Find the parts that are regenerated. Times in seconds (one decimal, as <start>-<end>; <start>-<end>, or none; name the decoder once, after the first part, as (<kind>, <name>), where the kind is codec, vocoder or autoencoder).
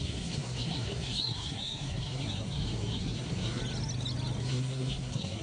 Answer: 0.0-3.6 (codec, SNAC); 4.4-5.4